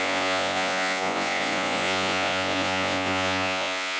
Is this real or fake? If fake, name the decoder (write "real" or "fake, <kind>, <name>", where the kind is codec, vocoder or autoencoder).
fake, vocoder, Vocos